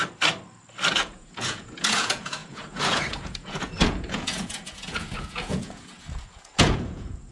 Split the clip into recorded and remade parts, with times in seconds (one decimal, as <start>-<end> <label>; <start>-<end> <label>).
0.0-0.9 recorded; 0.9-7.3 remade